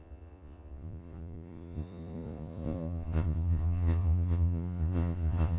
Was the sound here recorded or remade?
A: remade